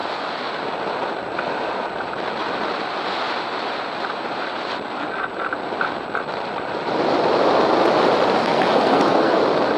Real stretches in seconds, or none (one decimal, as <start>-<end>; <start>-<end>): 0.0-8.4; 9.4-9.8